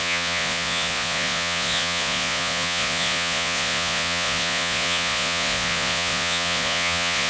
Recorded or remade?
remade